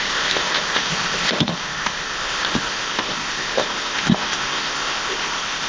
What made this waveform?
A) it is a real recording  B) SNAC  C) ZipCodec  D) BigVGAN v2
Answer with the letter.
C